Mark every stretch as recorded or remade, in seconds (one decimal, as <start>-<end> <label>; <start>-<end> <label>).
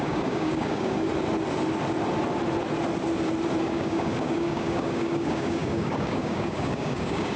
0.0-1.1 remade; 1.1-3.6 recorded; 3.6-7.4 remade